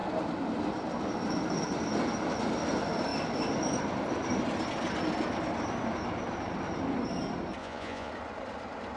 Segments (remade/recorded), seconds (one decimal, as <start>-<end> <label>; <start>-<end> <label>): 0.0-7.6 recorded; 7.6-8.1 remade; 8.1-9.0 recorded